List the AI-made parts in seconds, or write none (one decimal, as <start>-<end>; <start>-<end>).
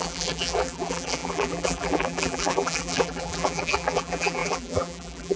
0.0-5.4